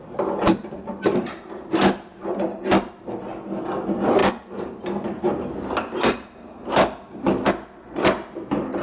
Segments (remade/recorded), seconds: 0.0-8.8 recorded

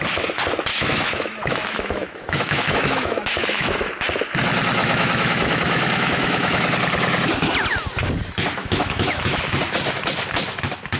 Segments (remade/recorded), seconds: 0.0-0.7 recorded; 0.7-3.9 remade; 3.9-4.8 recorded; 4.8-6.7 remade; 6.7-8.6 recorded; 8.6-9.4 remade; 9.4-11.0 recorded

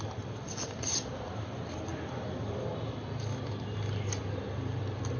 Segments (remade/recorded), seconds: 0.0-5.2 recorded

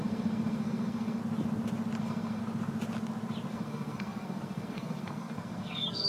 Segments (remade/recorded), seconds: 0.0-1.2 remade; 1.2-2.0 recorded; 2.0-2.4 remade; 2.4-3.5 recorded; 3.5-6.1 remade

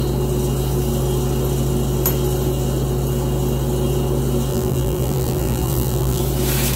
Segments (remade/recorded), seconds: 0.0-4.5 recorded; 4.5-6.2 remade; 6.2-6.8 recorded